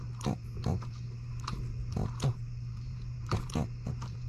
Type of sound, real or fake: fake